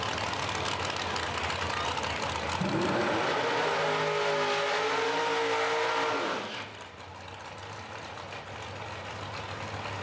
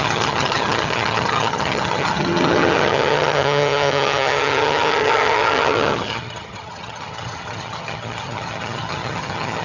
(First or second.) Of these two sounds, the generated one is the second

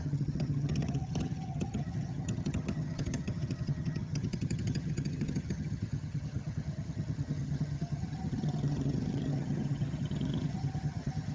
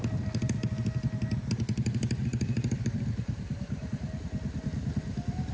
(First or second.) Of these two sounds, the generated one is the first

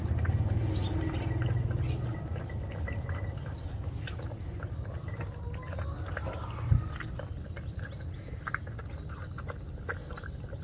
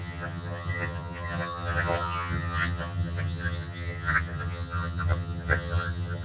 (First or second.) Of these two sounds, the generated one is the second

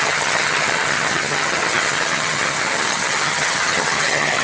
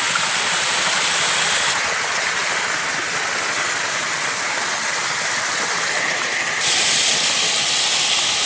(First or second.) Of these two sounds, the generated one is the first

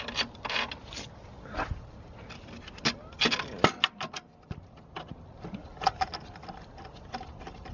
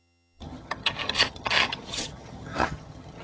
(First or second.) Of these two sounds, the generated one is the second